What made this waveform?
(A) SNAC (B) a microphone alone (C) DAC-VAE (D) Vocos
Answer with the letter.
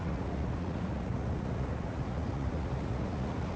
D